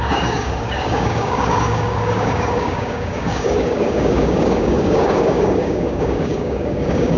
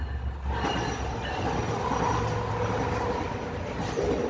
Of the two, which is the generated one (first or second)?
first